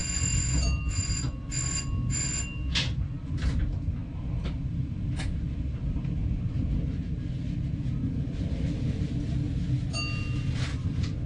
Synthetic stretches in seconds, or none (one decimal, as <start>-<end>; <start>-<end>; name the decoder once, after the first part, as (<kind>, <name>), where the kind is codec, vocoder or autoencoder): none